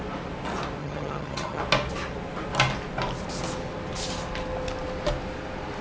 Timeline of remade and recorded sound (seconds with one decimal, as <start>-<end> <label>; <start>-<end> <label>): 0.0-0.8 recorded; 0.8-1.6 remade; 1.6-5.8 recorded